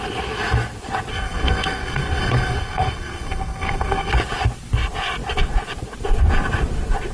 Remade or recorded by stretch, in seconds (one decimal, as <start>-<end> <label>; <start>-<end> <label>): 0.0-1.1 recorded; 1.1-4.1 remade; 4.1-7.1 recorded